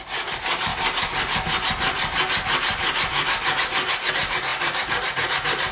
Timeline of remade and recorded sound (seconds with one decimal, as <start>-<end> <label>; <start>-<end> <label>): 0.0-5.7 recorded